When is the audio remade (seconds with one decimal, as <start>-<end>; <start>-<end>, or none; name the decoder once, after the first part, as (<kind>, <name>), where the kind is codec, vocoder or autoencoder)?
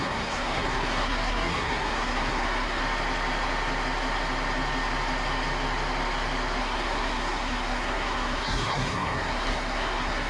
0.0-2.8 (codec, SNAC); 6.6-10.3